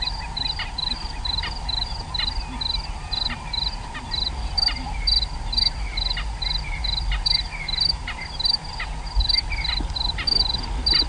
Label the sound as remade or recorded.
recorded